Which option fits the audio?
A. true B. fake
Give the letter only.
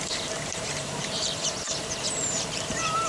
B